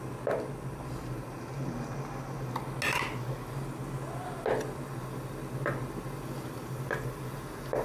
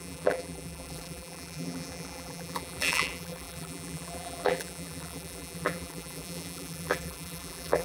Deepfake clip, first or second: second